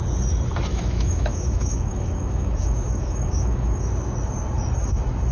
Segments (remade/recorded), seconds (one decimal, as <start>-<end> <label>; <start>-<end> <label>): 0.0-0.7 recorded; 0.7-3.9 remade; 3.9-5.3 recorded